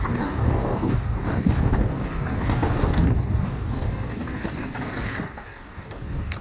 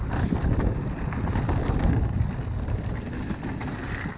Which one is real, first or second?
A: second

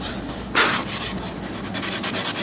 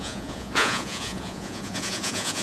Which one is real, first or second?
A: first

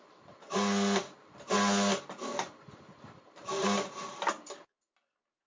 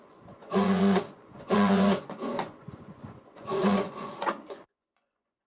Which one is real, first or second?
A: first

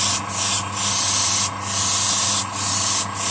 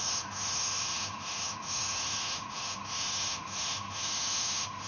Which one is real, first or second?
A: first